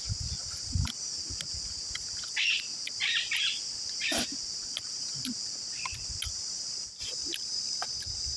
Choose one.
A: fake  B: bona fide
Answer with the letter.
B